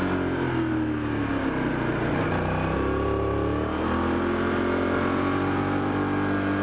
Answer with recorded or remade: recorded